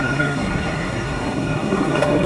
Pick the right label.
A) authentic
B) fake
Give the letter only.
B